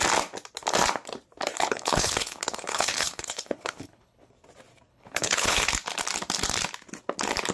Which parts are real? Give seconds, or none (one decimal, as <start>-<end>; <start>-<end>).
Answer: 0.0-1.5; 4.3-4.9; 5.7-7.5